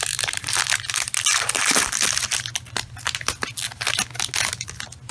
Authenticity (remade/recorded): recorded